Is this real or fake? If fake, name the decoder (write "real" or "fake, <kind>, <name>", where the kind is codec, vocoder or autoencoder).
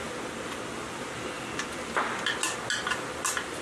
real